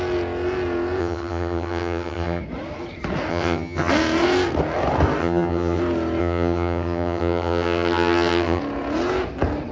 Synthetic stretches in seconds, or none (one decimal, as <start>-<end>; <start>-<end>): 1.0-2.4; 3.3-3.9; 5.2-5.8; 6.2-8.6